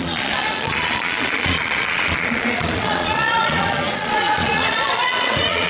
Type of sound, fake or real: fake